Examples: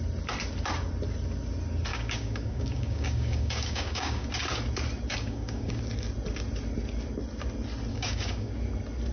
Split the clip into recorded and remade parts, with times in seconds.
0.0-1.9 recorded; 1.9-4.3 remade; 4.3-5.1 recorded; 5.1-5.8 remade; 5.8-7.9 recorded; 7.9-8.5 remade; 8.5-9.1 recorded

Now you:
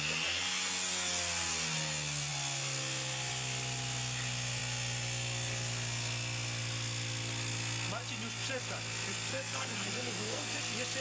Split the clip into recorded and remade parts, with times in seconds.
0.0-9.3 recorded; 9.3-10.6 remade; 10.6-11.0 recorded

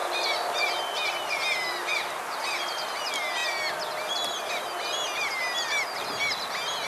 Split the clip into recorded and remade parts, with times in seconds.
0.0-6.9 recorded

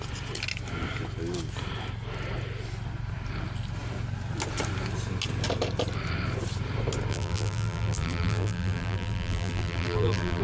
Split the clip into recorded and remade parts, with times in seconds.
0.0-7.1 recorded; 7.1-10.4 remade

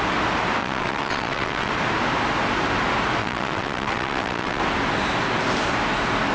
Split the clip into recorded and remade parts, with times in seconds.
0.0-0.6 recorded; 0.6-1.7 remade; 1.7-3.2 recorded; 3.2-4.6 remade; 4.6-6.3 recorded

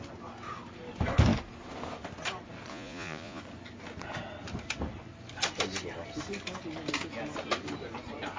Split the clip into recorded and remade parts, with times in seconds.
0.0-2.7 recorded; 2.7-3.4 remade; 3.4-8.4 recorded

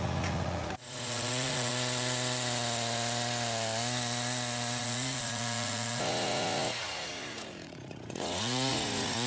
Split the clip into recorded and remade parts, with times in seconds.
0.0-1.7 remade; 1.7-4.8 recorded; 4.8-9.3 remade

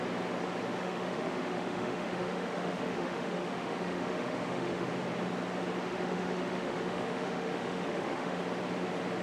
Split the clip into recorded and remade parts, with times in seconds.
0.0-0.8 recorded; 0.8-4.9 remade; 4.9-5.9 recorded; 5.9-8.4 remade; 8.4-9.2 recorded